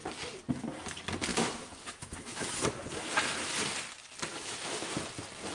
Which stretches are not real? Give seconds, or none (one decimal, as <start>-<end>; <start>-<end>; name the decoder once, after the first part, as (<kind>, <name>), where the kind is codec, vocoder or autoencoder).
1.3-2.5 (autoencoder, DAC-VAE); 4.3-4.9